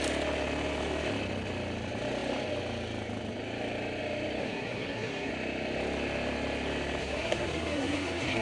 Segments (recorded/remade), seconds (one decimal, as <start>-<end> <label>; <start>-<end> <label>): 0.0-4.4 recorded; 4.4-5.3 remade; 5.3-7.0 recorded; 7.0-8.4 remade

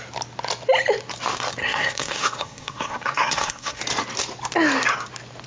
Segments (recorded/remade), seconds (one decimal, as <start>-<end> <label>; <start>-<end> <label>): 0.0-1.6 recorded; 1.6-3.8 remade; 3.8-5.5 recorded

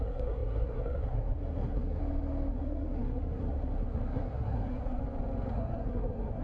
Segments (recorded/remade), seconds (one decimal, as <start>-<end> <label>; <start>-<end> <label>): 0.0-2.0 remade; 2.0-2.5 recorded; 2.5-5.0 remade; 5.0-5.5 recorded; 5.5-6.4 remade

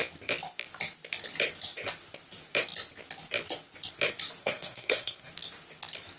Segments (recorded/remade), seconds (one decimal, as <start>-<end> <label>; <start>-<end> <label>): 0.0-4.4 recorded; 4.4-5.3 remade; 5.3-6.2 recorded

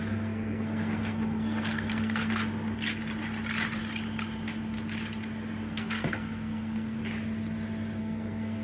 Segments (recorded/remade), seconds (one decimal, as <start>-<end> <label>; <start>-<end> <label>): 0.0-2.4 remade; 2.4-5.6 recorded; 5.6-7.0 remade; 7.0-8.0 recorded; 8.0-8.6 remade

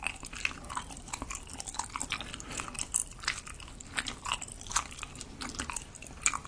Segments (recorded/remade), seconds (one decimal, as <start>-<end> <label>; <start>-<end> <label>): 0.0-6.5 recorded

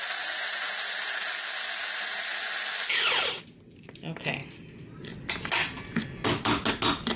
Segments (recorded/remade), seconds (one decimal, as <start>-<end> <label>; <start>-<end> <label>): 0.0-7.2 recorded

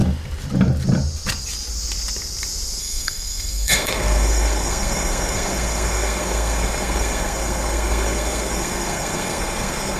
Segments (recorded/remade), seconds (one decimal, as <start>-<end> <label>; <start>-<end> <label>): 0.0-2.8 recorded; 2.8-10.0 remade